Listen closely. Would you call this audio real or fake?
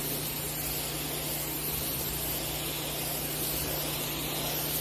real